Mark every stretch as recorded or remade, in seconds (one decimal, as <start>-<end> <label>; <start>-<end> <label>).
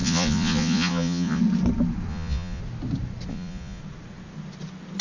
0.0-1.4 remade; 1.4-2.1 recorded; 2.1-2.6 remade; 2.6-3.3 recorded; 3.3-3.8 remade; 3.8-5.0 recorded